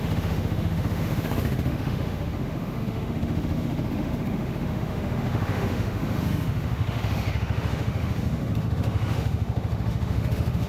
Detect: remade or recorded remade